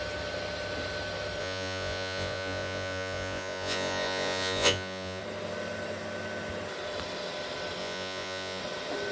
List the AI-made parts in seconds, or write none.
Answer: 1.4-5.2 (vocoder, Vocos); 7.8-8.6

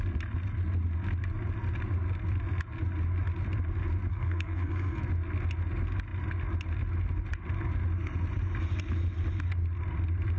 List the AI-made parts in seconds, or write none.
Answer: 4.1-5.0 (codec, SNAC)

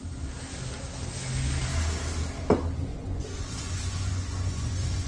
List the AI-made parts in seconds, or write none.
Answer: 2.9-5.1 (vocoder, Vocos)

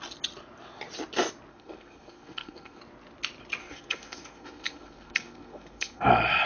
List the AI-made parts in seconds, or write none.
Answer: 1.5-2.8 (codec, SNAC); 3.6-6.1

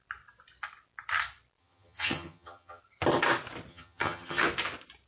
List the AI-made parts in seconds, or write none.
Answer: 1.6-2.8 (vocoder, HiFi-GAN); 3.7-4.4

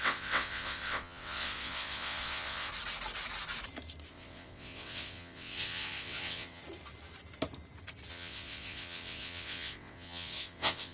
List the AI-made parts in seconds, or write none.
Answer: 0.0-2.7 (vocoder, WaveNeXt); 4.1-6.6; 8.1-10.9